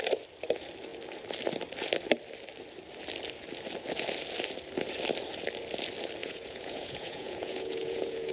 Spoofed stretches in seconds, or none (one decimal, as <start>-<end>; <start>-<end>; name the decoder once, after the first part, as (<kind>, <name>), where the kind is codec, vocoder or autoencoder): 6.2-8.3 (vocoder, Vocos)